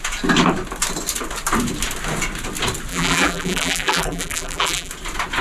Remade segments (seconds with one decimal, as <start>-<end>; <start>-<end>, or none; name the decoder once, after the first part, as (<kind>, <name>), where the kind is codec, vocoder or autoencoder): 2.9-4.9 (vocoder, BigVGAN v2)